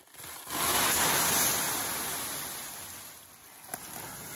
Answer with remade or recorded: recorded